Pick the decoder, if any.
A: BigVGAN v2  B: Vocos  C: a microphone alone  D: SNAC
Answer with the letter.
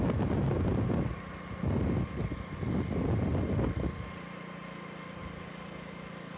C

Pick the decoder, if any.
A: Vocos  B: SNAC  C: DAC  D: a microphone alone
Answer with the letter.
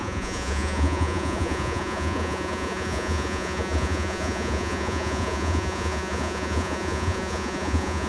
A